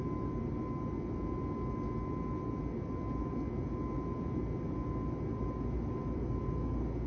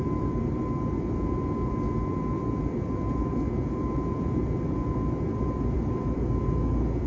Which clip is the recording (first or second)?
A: first